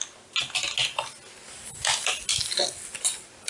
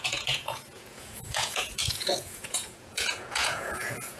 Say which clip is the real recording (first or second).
first